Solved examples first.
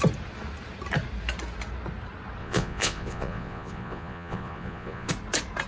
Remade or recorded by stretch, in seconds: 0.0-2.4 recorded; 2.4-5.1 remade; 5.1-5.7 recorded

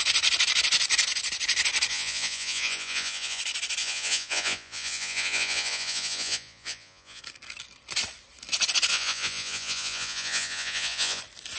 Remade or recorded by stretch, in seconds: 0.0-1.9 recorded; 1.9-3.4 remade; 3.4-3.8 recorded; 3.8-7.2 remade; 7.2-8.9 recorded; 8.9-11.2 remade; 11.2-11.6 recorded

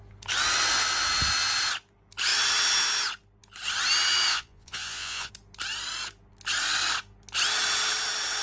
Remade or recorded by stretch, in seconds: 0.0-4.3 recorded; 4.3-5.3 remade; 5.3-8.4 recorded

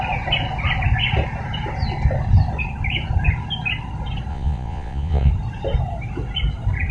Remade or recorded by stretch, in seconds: 0.0-4.3 recorded; 4.3-5.3 remade; 5.3-6.9 recorded